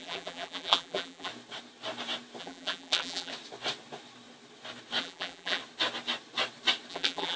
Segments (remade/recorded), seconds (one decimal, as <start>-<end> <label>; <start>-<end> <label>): 0.0-1.3 remade; 1.3-2.4 recorded; 2.4-3.3 remade; 3.3-5.0 recorded; 5.0-5.6 remade; 5.6-6.9 recorded; 6.9-7.4 remade